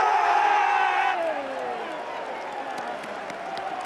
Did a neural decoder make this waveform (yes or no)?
no